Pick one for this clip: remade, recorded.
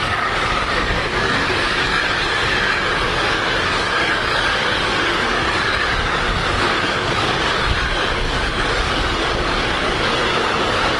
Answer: remade